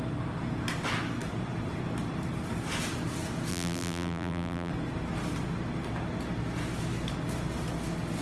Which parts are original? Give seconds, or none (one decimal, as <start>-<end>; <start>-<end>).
0.0-3.5; 4.7-8.2

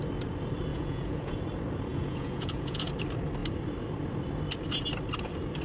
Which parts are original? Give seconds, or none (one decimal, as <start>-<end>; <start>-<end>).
0.0-0.7; 1.4-1.9; 2.9-5.6

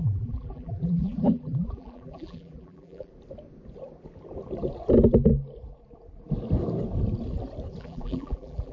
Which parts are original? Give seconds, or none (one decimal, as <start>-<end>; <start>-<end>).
3.1-7.8

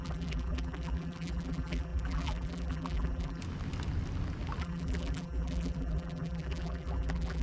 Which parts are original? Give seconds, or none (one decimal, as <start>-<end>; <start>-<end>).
3.4-4.6

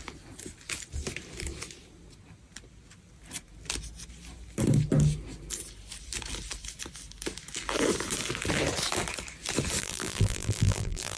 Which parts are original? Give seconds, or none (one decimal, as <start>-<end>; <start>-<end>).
0.0-9.8

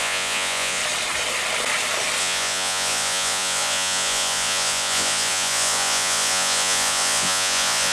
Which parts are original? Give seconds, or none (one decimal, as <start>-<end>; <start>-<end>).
0.8-2.2

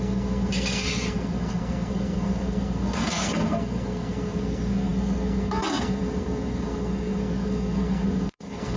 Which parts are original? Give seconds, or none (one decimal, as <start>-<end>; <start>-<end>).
none

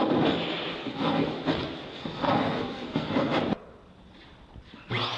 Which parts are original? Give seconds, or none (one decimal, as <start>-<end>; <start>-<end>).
0.0-0.8; 1.3-1.9; 3.4-5.2